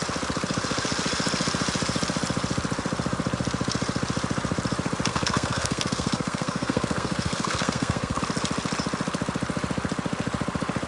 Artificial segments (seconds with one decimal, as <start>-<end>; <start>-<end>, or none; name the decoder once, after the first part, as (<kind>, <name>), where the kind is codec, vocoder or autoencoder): 5.1-8.2 (codec, SNAC)

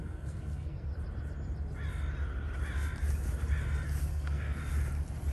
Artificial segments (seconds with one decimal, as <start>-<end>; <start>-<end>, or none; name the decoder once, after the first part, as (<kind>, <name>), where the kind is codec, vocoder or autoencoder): 0.0-0.9 (codec, SNAC); 4.1-4.6

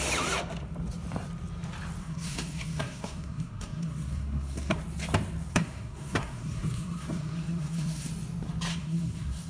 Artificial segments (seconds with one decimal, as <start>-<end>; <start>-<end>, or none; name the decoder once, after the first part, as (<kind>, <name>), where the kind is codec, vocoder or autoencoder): 2.0-4.8 (codec, SNAC); 5.5-8.1; 8.7-9.5

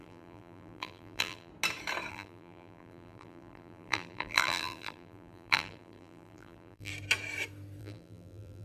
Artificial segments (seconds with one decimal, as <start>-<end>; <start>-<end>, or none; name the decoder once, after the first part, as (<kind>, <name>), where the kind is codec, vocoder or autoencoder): 0.0-1.5 (vocoder, BigVGAN v2); 2.1-6.9; 7.8-8.6

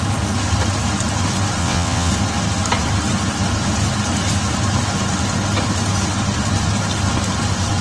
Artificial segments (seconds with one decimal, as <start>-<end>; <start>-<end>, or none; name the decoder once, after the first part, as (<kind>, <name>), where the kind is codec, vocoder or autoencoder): 1.6-2.1 (vocoder, WaveNeXt)